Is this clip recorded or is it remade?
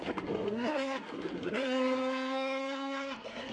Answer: remade